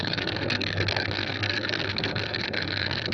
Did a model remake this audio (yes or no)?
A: yes